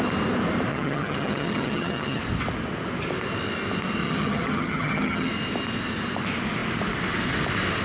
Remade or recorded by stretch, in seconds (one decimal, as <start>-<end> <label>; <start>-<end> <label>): 0.0-0.7 recorded; 0.7-2.2 remade; 2.2-4.0 recorded; 4.0-5.3 remade; 5.3-7.8 recorded